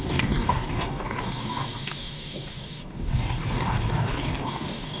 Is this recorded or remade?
remade